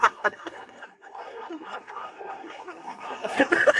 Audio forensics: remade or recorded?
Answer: remade